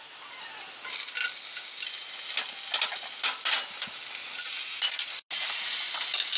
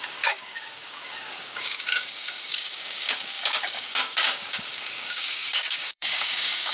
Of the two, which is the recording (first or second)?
first